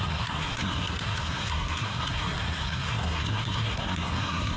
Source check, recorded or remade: remade